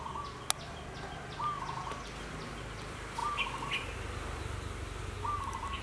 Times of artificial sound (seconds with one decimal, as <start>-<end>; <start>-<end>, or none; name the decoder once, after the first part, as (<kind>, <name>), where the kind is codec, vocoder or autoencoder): none